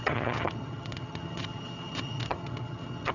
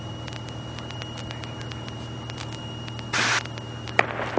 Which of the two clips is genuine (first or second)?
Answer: second